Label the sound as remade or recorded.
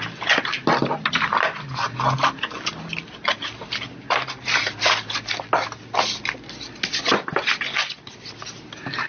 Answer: recorded